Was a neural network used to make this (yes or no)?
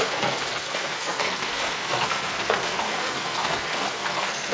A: yes